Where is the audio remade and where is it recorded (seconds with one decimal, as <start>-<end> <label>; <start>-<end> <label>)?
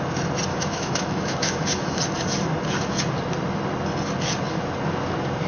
0.0-0.5 recorded; 0.5-2.0 remade; 2.0-5.5 recorded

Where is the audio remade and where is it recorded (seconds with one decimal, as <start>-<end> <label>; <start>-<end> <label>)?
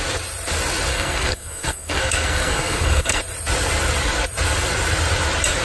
0.0-0.9 recorded; 0.9-3.2 remade; 3.2-5.6 recorded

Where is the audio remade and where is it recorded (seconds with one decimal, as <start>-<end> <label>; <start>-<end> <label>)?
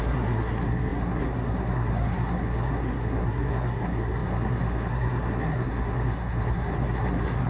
0.0-7.5 remade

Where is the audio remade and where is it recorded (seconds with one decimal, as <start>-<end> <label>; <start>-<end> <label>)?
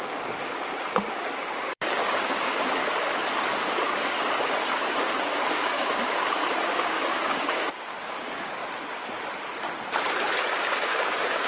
0.0-2.8 remade; 2.8-3.4 recorded; 3.4-8.6 remade; 8.6-10.5 recorded; 10.5-11.5 remade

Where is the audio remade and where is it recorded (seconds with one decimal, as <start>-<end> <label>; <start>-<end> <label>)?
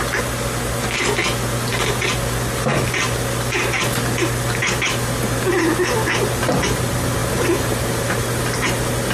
0.0-7.2 recorded; 7.2-8.4 remade; 8.4-9.1 recorded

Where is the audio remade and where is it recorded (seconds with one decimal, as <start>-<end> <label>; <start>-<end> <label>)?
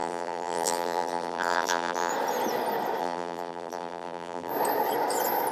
0.0-2.1 remade; 2.1-3.0 recorded; 3.0-4.5 remade; 4.5-5.5 recorded